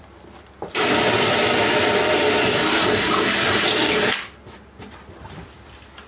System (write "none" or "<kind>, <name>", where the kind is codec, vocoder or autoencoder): none